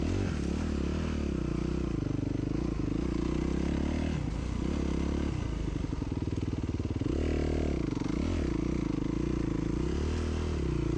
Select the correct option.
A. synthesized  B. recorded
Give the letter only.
B